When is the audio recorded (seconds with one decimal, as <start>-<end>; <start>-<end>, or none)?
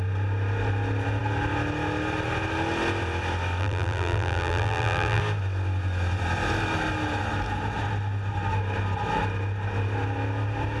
0.0-3.6; 5.2-10.8